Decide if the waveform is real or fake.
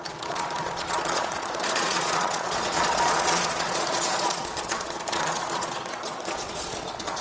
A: fake